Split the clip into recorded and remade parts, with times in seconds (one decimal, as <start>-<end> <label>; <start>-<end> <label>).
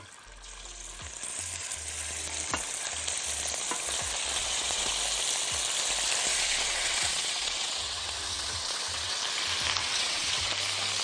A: 0.0-4.4 recorded; 4.4-4.9 remade; 4.9-6.3 recorded; 6.3-9.2 remade; 9.2-9.8 recorded; 9.8-10.5 remade; 10.5-11.0 recorded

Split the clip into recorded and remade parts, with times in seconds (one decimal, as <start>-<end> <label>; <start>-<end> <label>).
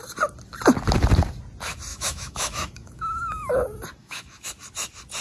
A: 0.0-1.9 recorded; 1.9-3.5 remade; 3.5-4.0 recorded; 4.0-4.5 remade; 4.5-5.2 recorded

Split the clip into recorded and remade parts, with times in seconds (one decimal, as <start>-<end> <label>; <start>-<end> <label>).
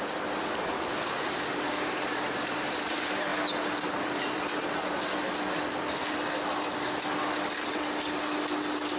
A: 0.0-9.0 recorded